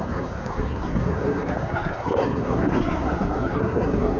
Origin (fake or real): fake